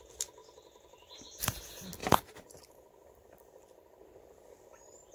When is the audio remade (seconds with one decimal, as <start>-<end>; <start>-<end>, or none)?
none